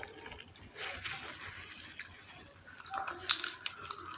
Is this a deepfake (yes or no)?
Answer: no